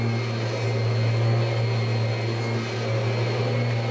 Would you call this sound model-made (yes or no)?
no